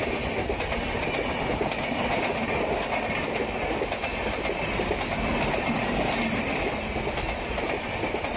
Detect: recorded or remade recorded